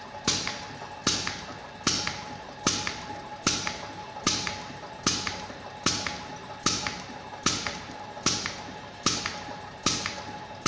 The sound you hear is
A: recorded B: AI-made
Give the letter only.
A